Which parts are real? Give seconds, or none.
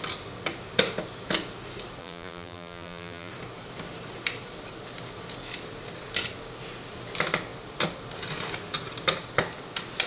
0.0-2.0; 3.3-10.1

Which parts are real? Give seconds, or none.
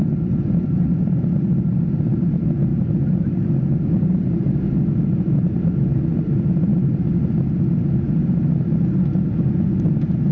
2.2-2.7; 5.0-6.7; 7.9-10.3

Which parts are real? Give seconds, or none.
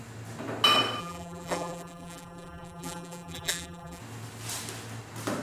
0.0-1.0; 4.0-5.4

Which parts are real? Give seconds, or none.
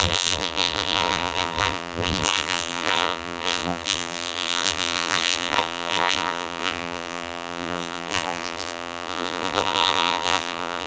none